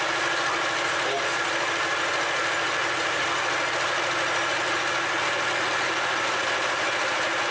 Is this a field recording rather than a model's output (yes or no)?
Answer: yes